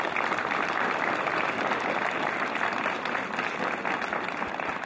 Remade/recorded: recorded